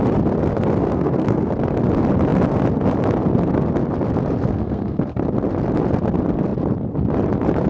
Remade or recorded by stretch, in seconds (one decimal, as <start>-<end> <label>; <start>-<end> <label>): 0.0-0.8 recorded; 0.8-1.5 remade; 1.5-4.5 recorded; 4.5-5.2 remade; 5.2-7.7 recorded